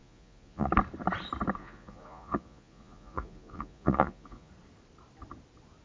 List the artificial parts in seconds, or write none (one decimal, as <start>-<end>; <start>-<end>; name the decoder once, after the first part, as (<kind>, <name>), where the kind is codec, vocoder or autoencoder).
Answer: 0.0-0.7 (vocoder, Vocos); 1.6-4.5